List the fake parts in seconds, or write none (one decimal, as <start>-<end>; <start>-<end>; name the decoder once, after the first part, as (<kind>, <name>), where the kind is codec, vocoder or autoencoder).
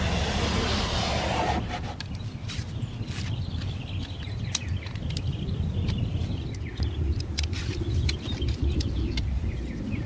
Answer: none